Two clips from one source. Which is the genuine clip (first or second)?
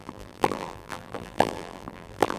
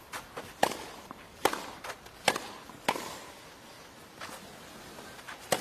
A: second